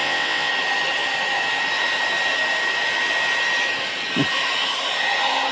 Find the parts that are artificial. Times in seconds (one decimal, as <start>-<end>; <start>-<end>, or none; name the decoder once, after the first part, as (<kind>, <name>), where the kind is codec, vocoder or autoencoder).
0.0-0.5 (vocoder, WaveNeXt)